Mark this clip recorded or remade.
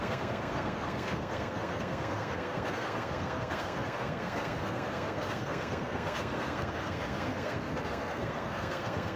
remade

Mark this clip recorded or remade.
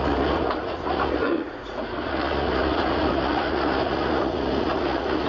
remade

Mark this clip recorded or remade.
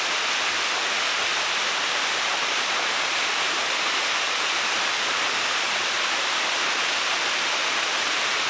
recorded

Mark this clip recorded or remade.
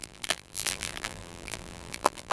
remade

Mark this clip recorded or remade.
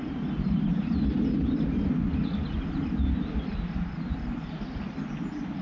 recorded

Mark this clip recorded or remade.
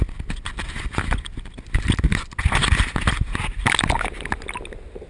recorded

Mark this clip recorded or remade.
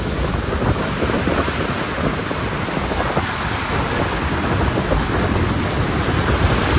recorded